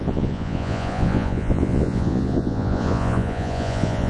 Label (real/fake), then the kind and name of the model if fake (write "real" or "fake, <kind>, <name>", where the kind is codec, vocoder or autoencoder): fake, vocoder, Vocos